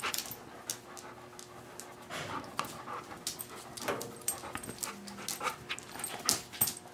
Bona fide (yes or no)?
yes